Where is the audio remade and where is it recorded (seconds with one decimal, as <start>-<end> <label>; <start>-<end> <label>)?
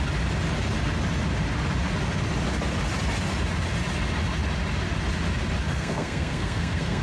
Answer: 0.0-5.7 recorded; 5.7-7.0 remade